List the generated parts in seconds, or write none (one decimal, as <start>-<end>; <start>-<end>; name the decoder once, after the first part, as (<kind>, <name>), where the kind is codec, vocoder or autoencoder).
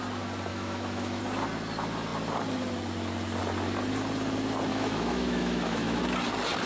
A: 0.5-1.2 (autoencoder, DAC-VAE); 4.7-6.0